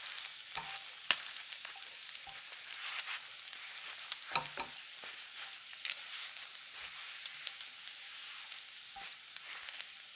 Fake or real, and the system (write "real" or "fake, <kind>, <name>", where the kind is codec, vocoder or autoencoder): real